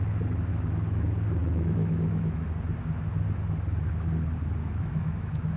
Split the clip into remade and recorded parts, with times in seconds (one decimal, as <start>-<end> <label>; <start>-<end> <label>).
0.0-0.5 recorded; 0.5-1.0 remade; 1.0-1.4 recorded; 1.4-2.4 remade; 2.4-4.6 recorded; 4.6-5.6 remade